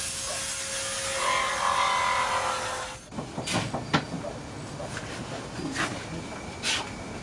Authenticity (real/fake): real